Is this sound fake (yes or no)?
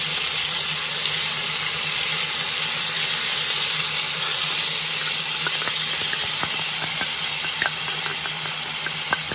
no